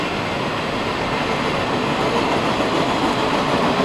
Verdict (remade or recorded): recorded